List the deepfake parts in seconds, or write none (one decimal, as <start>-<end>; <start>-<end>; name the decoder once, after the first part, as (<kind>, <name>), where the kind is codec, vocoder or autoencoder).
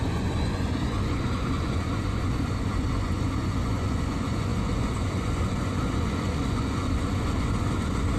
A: 0.0-8.2 (vocoder, Vocos)